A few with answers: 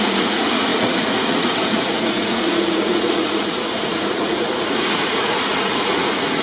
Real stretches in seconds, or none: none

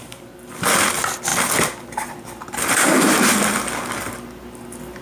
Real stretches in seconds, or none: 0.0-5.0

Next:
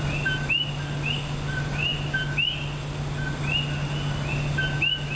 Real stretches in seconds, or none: 0.0-5.2

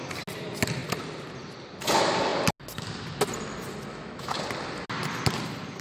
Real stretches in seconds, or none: 0.0-3.9; 4.4-5.8

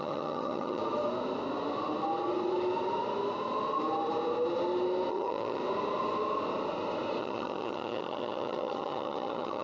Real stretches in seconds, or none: 0.8-5.1; 5.6-7.2

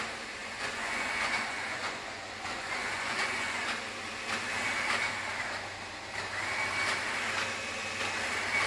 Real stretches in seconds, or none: 0.0-0.4; 3.7-8.7

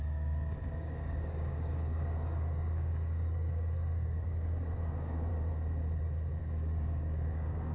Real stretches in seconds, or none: 5.3-6.4